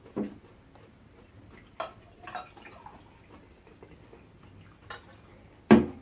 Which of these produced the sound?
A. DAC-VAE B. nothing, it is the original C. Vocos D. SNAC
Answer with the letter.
B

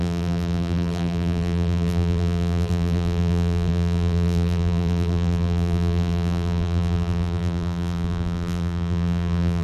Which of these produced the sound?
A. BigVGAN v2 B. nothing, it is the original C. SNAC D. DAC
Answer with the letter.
A